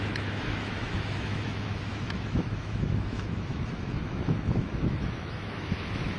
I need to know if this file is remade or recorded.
remade